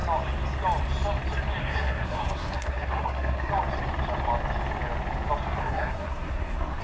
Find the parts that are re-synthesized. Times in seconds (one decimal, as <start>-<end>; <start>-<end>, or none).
1.6-3.5; 5.6-6.8